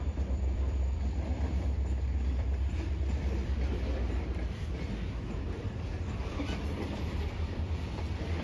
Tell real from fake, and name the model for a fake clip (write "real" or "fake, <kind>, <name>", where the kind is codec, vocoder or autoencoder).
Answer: fake, vocoder, BigVGAN v2